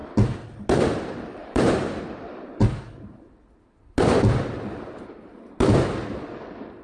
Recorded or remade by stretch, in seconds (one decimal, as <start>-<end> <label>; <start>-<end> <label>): 0.0-1.4 recorded; 1.4-2.0 remade; 2.0-6.8 recorded